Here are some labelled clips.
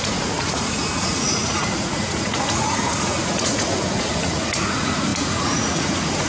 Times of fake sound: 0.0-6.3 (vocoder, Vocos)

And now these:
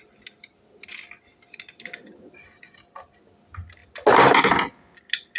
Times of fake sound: none

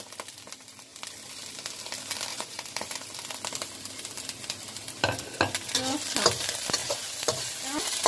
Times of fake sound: 2.3-3.0 (vocoder, Vocos); 6.8-7.4

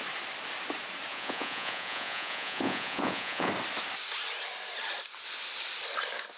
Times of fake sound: 1.1-3.5 (vocoder, Vocos)

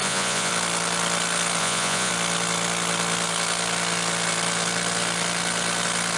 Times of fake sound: 0.0-0.5 (vocoder, Vocos); 1.6-2.1

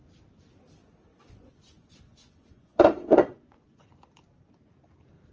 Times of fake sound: 1.1-3.9 (vocoder, Vocos)